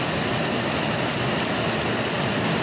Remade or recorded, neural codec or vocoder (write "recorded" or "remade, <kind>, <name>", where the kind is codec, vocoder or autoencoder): recorded